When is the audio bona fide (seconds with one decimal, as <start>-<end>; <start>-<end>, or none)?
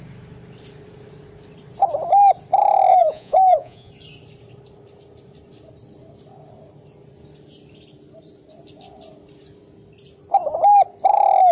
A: 0.0-2.9; 3.9-11.5